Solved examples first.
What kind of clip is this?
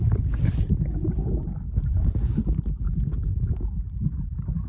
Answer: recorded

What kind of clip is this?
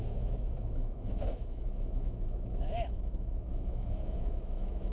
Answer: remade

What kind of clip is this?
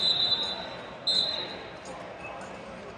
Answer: recorded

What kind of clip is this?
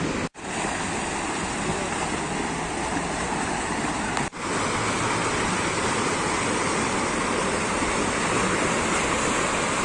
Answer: recorded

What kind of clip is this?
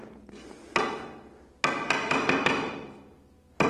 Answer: recorded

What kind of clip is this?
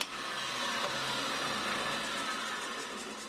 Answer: recorded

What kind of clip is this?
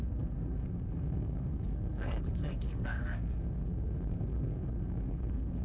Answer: remade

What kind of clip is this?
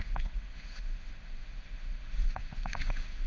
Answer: remade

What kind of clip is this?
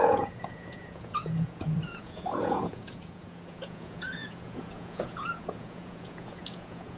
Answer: remade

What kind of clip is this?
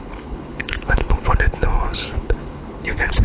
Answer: remade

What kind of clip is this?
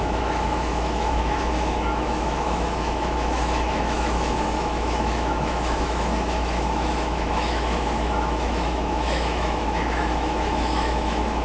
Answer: remade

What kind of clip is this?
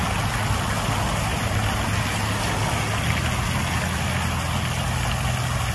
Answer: recorded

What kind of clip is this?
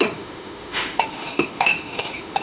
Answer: remade